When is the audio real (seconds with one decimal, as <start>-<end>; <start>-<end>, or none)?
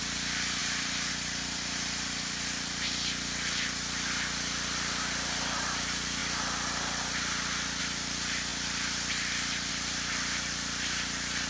none